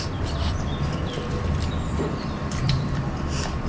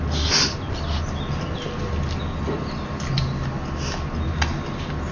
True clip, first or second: second